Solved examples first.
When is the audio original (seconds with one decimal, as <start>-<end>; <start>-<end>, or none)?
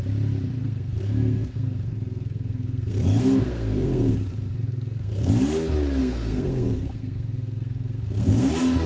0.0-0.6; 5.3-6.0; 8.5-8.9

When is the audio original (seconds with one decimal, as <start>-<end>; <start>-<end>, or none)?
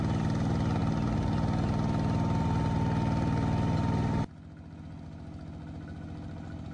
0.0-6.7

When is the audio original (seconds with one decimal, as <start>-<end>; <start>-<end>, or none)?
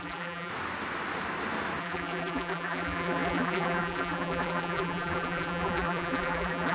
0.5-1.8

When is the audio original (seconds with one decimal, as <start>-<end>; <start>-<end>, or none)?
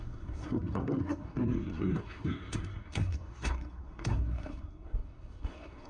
none